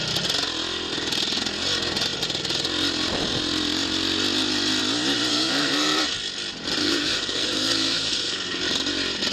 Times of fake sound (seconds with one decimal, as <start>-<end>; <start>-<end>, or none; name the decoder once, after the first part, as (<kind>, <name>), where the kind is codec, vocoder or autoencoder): 5.3-6.0 (codec, SNAC); 6.8-8.6